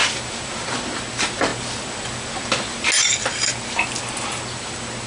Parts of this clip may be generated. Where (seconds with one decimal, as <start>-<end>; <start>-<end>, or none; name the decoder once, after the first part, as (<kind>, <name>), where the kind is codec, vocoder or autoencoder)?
none